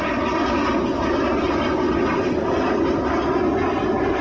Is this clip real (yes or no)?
yes